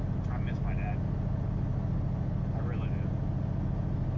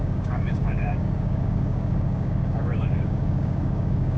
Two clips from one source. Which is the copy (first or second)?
second